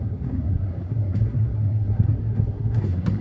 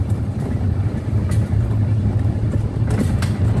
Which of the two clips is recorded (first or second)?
second